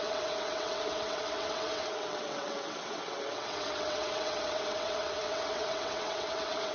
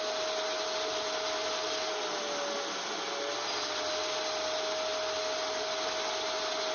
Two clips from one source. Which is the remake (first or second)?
first